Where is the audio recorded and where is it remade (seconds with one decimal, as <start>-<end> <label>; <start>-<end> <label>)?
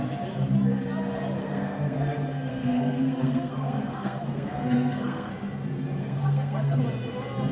0.0-1.4 recorded; 1.4-5.3 remade; 5.3-6.0 recorded; 6.0-6.8 remade; 6.8-7.5 recorded